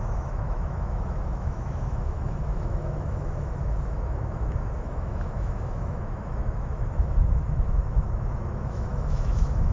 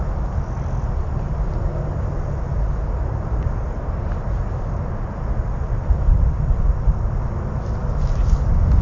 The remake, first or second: first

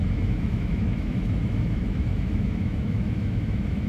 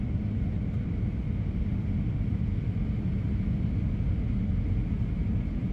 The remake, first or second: first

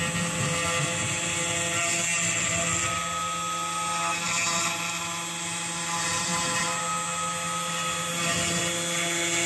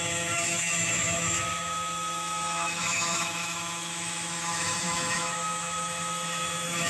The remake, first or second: second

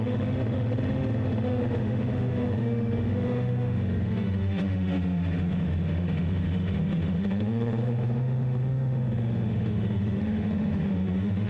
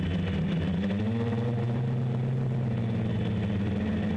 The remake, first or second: first